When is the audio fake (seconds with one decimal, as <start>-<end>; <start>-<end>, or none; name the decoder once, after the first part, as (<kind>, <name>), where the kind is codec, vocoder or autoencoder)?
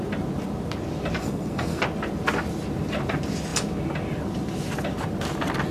1.2-1.8 (codec, SNAC)